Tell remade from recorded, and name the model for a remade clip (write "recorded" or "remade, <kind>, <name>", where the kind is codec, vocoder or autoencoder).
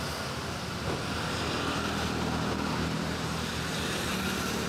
recorded